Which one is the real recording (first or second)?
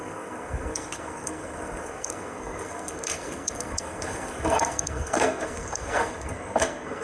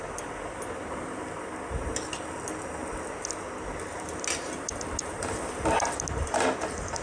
second